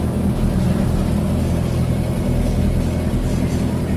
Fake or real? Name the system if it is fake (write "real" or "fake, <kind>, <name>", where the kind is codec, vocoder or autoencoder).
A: real